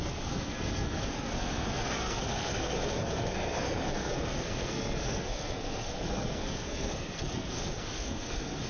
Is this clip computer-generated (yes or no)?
yes